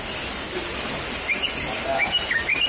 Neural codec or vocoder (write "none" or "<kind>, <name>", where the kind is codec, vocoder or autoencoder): none